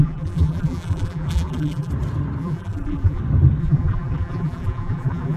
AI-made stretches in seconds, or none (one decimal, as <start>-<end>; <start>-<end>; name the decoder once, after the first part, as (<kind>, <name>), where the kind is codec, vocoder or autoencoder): 0.0-1.9 (vocoder, BigVGAN v2); 2.4-3.2; 3.6-5.4